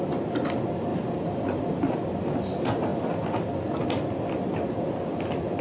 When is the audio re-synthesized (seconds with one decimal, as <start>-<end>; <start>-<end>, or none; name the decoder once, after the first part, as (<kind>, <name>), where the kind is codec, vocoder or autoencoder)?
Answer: 0.9-1.9 (vocoder, BigVGAN v2)